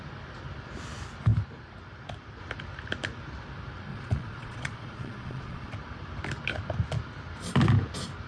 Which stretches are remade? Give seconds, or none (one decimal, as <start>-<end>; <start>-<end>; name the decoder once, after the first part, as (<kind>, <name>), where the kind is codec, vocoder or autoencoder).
3.9-5.7 (vocoder, Vocos)